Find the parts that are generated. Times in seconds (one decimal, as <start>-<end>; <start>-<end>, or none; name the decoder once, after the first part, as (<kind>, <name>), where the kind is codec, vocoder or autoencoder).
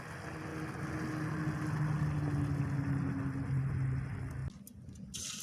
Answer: none